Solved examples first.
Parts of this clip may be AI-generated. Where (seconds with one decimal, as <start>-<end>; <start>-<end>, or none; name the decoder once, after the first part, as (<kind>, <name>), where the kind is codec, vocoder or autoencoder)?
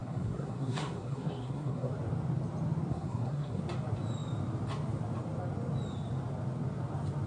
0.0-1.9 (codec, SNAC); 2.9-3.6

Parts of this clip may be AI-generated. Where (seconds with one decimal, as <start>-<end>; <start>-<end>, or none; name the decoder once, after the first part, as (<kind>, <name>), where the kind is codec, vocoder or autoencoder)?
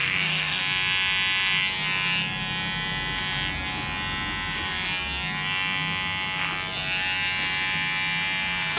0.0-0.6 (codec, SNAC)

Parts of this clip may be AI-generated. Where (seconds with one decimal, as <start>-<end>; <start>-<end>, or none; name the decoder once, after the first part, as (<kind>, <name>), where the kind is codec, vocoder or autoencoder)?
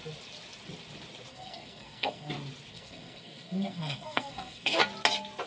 1.3-2.3 (codec, SNAC); 2.7-4.8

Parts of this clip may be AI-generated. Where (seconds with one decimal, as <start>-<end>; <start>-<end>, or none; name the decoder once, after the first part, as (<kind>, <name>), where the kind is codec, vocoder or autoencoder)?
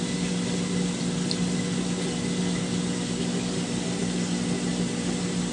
none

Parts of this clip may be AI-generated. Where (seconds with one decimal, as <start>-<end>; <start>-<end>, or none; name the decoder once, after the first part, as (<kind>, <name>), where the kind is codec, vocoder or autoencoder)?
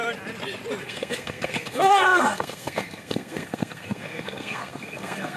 0.8-5.4 (codec, SNAC)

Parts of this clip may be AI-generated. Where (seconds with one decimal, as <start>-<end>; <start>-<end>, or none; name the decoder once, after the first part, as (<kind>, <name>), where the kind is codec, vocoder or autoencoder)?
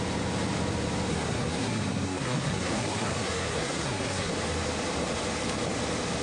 1.1-4.3 (codec, SNAC)